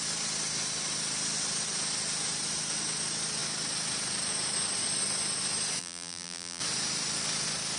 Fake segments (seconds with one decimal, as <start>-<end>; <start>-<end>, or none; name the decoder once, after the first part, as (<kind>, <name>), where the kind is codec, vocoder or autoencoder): 5.8-6.6 (vocoder, BigVGAN v2)